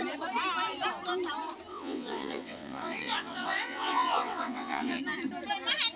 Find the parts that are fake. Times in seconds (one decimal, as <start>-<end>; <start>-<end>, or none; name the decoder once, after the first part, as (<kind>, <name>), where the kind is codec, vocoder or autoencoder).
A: 1.7-5.0 (vocoder, WaveNeXt)